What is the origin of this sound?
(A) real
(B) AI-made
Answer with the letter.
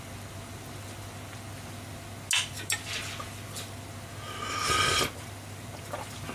A